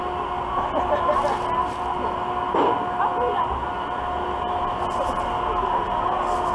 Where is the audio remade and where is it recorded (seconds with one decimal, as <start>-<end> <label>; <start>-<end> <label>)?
0.0-6.5 recorded